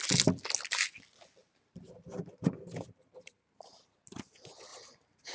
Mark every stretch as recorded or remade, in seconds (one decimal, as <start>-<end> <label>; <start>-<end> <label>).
0.0-1.4 recorded; 1.4-3.8 remade; 3.8-4.7 recorded; 4.7-5.3 remade